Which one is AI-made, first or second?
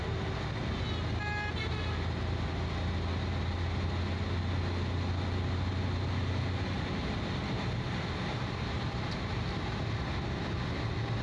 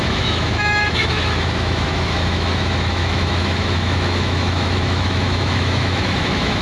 second